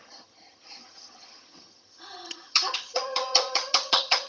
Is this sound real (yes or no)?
no